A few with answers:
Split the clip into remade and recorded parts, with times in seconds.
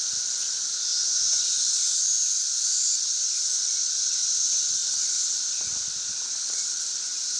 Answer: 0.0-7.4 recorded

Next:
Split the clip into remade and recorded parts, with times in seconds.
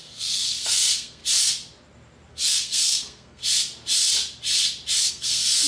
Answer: 0.0-1.2 remade; 1.2-2.3 recorded; 2.3-3.4 remade; 3.4-5.1 recorded; 5.1-5.7 remade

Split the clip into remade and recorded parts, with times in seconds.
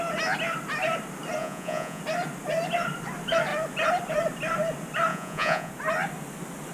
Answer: 0.0-1.4 recorded; 1.4-2.0 remade; 2.0-5.1 recorded; 5.1-5.7 remade; 5.7-6.7 recorded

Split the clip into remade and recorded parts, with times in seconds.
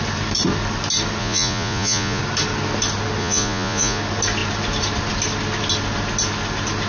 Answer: 0.0-1.2 recorded; 1.2-2.2 remade; 2.2-3.2 recorded; 3.2-4.0 remade; 4.0-6.9 recorded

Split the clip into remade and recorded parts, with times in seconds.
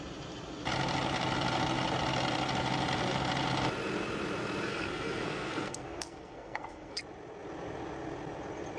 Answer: 0.0-4.7 recorded; 4.7-7.0 remade; 7.0-8.8 recorded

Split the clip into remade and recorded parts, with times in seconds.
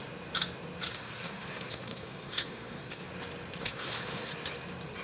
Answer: 0.0-0.9 recorded; 0.9-3.1 remade; 3.1-3.6 recorded; 3.6-4.3 remade; 4.3-5.0 recorded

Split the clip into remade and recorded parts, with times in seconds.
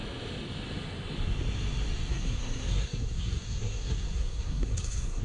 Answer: 0.0-2.1 recorded; 2.1-5.2 remade